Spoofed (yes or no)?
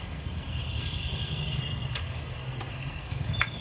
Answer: yes